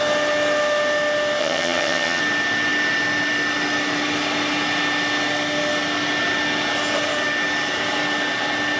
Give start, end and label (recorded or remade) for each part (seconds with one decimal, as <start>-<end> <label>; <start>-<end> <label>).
0.0-1.4 recorded; 1.4-2.2 remade; 2.2-8.8 recorded